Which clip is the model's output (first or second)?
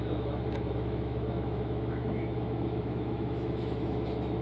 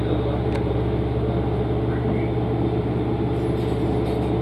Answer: first